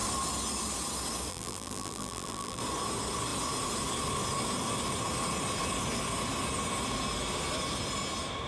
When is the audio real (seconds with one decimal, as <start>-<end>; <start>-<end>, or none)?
0.0-1.3; 2.6-8.5